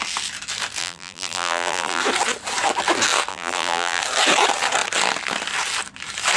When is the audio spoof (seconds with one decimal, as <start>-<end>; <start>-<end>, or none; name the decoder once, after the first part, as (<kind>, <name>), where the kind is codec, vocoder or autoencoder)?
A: 0.8-2.0 (vocoder, BigVGAN v2); 3.3-4.0